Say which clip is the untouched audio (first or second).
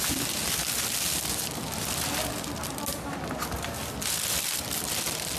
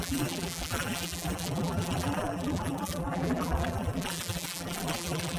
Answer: first